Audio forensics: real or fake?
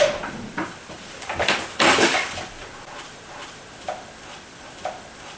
fake